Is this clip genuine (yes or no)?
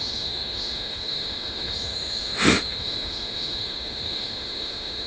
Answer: no